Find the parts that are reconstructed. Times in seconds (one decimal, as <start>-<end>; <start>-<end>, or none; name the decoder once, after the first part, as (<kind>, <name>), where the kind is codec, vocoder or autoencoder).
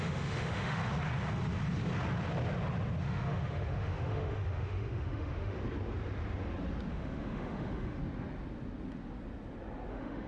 0.0-0.8 (autoencoder, DAC-VAE); 3.0-5.6; 6.9-8.0; 9.9-10.3